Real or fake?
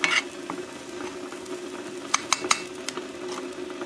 real